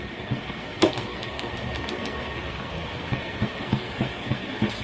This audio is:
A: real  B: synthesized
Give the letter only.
B